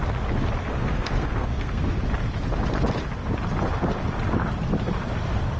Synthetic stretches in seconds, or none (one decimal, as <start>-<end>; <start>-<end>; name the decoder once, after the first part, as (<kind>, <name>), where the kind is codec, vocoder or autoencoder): 0.7-1.9 (codec, SNAC)